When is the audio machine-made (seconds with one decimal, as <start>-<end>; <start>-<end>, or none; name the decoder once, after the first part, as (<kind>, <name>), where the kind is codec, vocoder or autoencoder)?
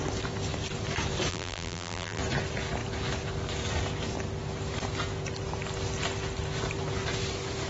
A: 1.3-2.2 (vocoder, BigVGAN v2)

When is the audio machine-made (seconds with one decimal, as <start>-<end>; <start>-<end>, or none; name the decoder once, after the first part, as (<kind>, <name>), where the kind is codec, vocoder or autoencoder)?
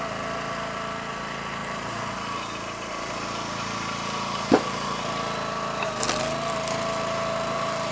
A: 1.6-5.0 (vocoder, BigVGAN v2)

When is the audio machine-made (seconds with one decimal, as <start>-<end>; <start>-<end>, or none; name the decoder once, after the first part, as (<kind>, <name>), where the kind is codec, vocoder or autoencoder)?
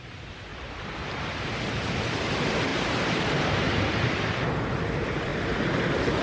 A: 0.5-1.5 (vocoder, BigVGAN v2); 2.7-4.5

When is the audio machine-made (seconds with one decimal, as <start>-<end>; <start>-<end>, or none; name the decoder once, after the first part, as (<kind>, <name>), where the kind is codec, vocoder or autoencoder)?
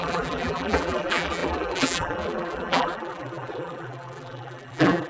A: 0.0-5.1 (vocoder, BigVGAN v2)